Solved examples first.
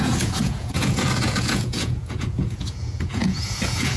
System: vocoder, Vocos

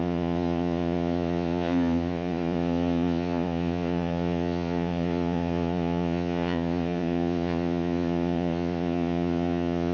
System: vocoder, Vocos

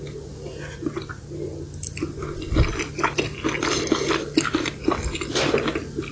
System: none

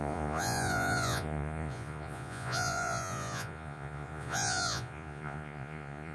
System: vocoder, Vocos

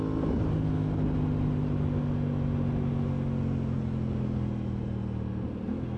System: none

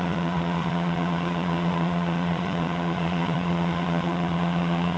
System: vocoder, Vocos